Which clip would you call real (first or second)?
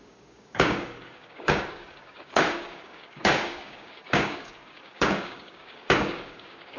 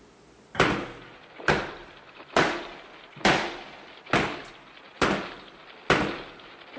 second